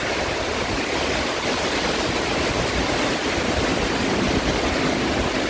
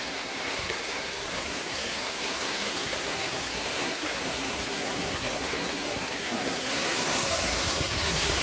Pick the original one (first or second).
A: first